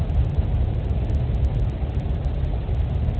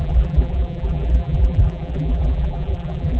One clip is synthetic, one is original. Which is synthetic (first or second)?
second